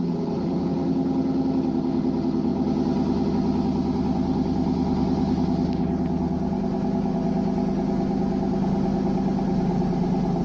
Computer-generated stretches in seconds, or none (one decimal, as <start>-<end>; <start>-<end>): none